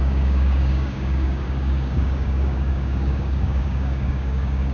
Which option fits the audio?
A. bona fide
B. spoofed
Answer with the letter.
B